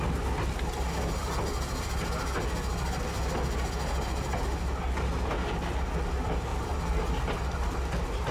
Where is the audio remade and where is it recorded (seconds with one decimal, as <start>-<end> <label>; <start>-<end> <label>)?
0.0-6.5 recorded; 6.5-7.1 remade; 7.1-8.3 recorded